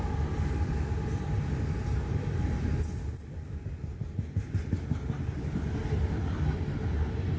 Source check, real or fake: real